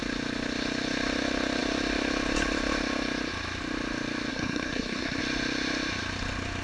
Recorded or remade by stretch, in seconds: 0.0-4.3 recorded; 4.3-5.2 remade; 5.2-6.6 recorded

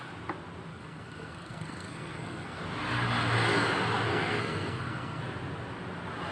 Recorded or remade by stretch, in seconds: 0.0-0.7 recorded; 0.7-2.6 remade; 2.6-4.1 recorded; 4.1-5.2 remade; 5.2-6.3 recorded

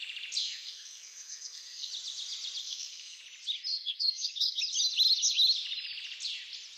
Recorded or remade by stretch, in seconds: 0.0-0.4 recorded; 0.4-1.9 remade; 1.9-2.6 recorded; 2.6-3.2 remade; 3.2-3.7 recorded; 3.7-4.6 remade; 4.6-6.8 recorded

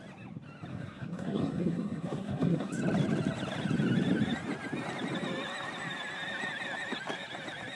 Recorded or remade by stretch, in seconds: 0.0-0.7 recorded; 0.7-2.7 remade; 2.7-7.8 recorded

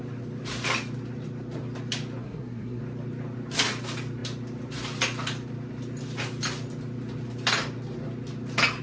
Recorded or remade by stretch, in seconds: 0.0-2.2 recorded; 2.2-2.8 remade; 2.8-8.8 recorded

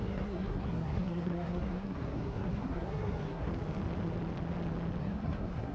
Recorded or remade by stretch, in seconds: 0.0-3.5 remade; 3.5-5.0 recorded; 5.0-5.7 remade